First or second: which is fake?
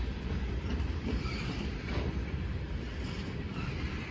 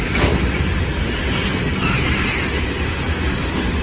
first